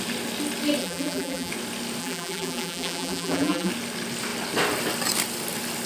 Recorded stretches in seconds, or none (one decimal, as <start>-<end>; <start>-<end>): 0.0-0.8; 1.5-2.0; 3.7-5.9